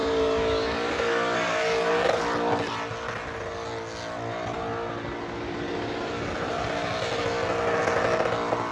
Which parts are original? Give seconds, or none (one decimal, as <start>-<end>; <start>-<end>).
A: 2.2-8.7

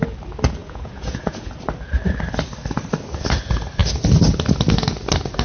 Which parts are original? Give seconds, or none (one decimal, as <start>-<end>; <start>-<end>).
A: 0.0-0.6; 1.5-5.4

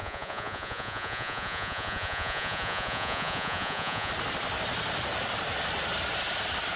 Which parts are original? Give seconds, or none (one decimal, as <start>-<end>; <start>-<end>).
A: 4.1-6.8